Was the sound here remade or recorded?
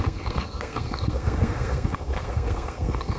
remade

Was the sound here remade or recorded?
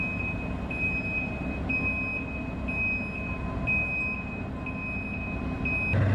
recorded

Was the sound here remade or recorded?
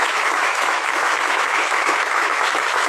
remade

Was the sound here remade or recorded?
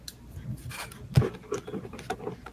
recorded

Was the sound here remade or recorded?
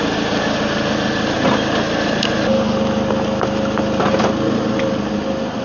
recorded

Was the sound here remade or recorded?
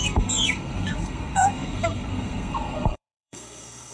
remade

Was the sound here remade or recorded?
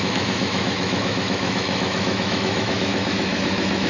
remade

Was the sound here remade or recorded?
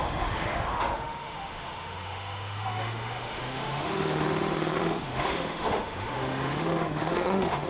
remade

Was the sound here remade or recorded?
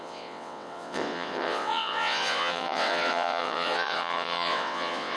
remade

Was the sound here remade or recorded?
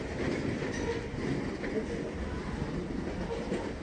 recorded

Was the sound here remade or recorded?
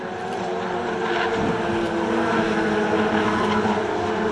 recorded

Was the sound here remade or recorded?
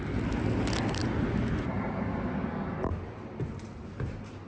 recorded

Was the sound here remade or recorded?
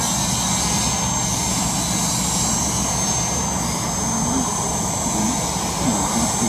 recorded